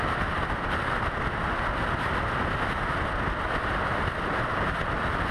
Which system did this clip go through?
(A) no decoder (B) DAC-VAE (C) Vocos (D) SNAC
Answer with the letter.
A